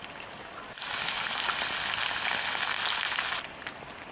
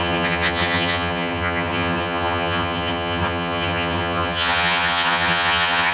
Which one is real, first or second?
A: first